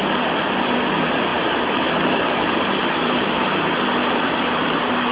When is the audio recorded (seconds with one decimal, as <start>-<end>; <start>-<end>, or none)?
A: 0.0-5.1